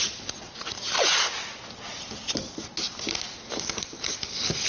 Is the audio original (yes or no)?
yes